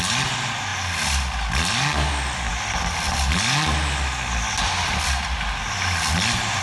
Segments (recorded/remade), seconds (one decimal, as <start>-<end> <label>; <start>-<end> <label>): 0.0-6.6 recorded

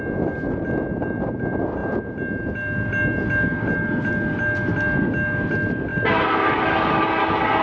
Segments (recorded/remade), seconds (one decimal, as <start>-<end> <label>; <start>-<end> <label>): 0.0-7.6 recorded

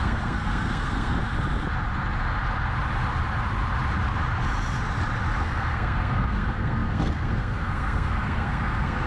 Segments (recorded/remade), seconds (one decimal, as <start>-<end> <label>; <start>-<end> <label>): 0.0-1.2 remade; 1.2-5.4 recorded; 5.4-9.1 remade